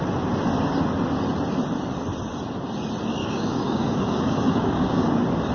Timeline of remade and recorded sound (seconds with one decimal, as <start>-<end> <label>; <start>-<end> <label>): 0.0-3.2 recorded; 3.2-5.1 remade; 5.1-5.5 recorded